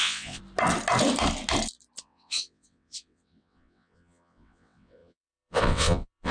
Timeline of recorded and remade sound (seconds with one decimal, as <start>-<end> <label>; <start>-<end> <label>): 0.0-0.4 remade; 0.4-2.0 recorded; 2.0-6.3 remade